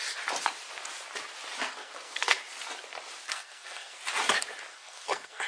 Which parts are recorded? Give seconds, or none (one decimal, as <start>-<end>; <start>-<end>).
0.0-1.6; 2.4-3.3; 4.0-4.7